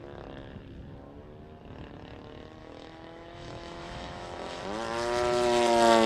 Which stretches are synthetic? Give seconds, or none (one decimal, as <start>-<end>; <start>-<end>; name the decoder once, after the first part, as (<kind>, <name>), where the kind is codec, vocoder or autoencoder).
2.6-4.6 (autoencoder, DAC-VAE)